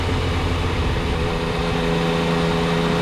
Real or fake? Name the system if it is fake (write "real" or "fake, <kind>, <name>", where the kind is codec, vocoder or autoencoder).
real